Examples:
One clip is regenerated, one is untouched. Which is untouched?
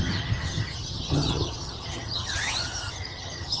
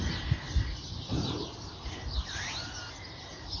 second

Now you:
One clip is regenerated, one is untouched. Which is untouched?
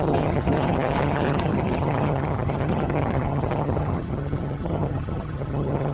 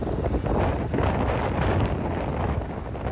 second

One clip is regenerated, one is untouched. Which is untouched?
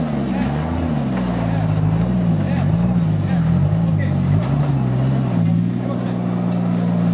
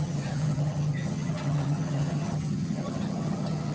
first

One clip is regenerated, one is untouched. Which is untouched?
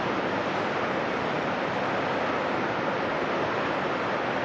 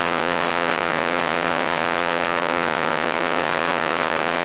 first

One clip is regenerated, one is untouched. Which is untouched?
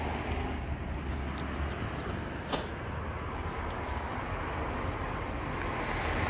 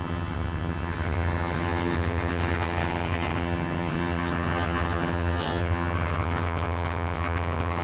first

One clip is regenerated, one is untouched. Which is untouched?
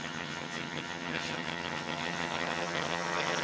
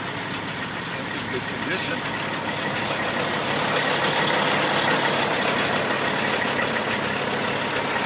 second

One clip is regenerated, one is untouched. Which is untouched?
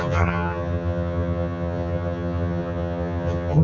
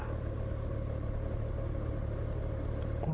second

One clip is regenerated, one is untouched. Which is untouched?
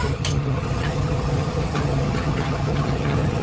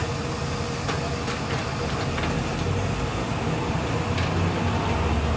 second